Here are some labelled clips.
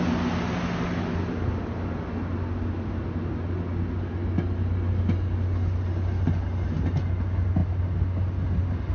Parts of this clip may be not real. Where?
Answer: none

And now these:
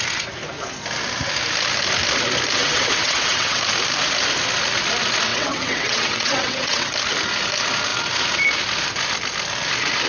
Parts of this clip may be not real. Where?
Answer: 2.6-3.6 (vocoder, WaveNeXt); 5.3-6.9

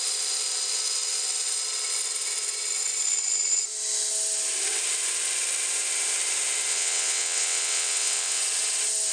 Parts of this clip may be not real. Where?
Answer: 6.7-8.4 (vocoder, WaveNeXt)

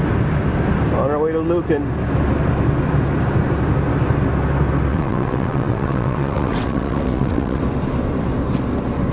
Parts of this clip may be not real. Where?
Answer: 4.9-7.6 (vocoder, WaveNeXt)